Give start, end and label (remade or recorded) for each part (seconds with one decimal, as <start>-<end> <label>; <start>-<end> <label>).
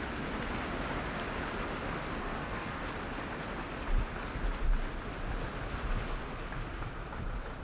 0.0-2.2 recorded; 2.2-2.8 remade; 2.8-7.6 recorded